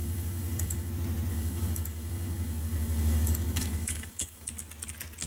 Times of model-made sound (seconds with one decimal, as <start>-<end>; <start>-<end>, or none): 0.0-0.9; 1.3-4.5